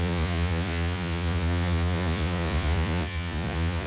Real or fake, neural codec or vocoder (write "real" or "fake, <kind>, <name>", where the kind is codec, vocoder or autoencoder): fake, vocoder, Vocos